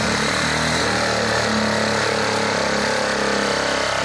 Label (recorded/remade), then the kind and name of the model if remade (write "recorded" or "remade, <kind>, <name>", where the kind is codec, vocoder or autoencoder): recorded